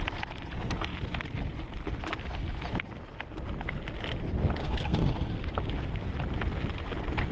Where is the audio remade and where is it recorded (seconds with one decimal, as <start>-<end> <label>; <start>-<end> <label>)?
0.0-4.6 recorded; 4.6-5.6 remade; 5.6-7.3 recorded